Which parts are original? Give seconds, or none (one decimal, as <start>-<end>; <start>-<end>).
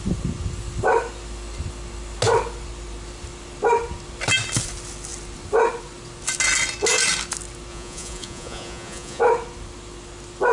0.0-7.7; 9.2-10.5